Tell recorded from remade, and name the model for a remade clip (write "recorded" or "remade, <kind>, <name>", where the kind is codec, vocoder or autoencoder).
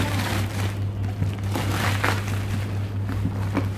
remade, vocoder, BigVGAN v2